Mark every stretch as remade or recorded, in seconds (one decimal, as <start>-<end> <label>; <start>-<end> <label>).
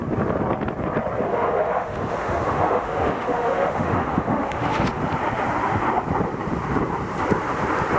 0.0-1.3 recorded; 1.3-5.0 remade; 5.0-8.0 recorded